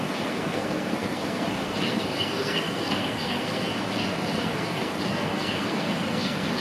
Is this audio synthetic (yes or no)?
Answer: yes